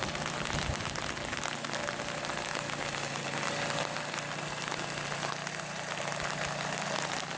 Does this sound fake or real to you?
real